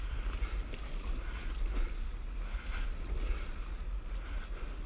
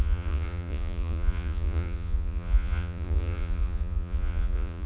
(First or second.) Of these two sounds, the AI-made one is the second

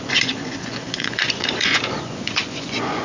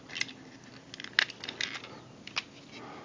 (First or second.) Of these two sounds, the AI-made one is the first